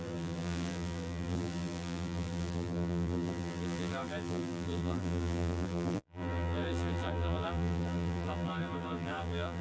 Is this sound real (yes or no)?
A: no